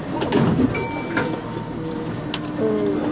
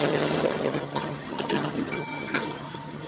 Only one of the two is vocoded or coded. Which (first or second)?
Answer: second